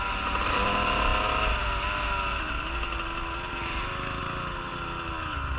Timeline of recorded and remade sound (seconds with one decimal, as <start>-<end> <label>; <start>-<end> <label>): 0.0-5.6 recorded